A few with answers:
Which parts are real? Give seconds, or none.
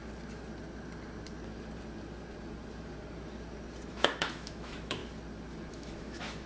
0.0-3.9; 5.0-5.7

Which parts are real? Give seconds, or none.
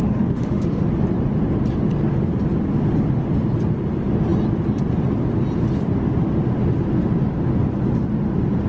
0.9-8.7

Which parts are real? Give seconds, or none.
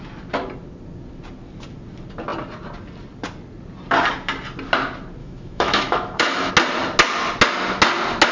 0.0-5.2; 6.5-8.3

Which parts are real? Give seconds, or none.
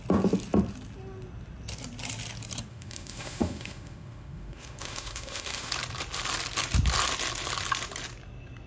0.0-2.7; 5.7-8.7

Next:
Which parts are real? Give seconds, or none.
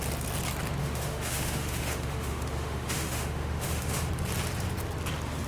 0.0-0.8; 4.1-5.5